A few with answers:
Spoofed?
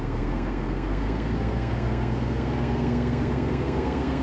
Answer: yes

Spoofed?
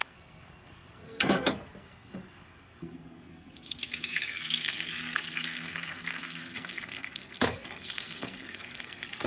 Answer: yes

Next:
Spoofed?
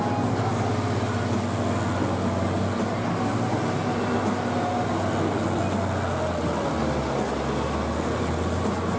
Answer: no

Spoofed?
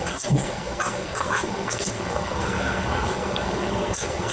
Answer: yes